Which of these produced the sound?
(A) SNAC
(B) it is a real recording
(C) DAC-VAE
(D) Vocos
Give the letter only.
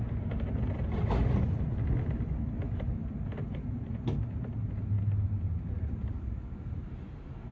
B